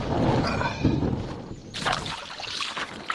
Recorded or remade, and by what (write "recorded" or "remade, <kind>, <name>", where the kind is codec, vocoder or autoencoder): recorded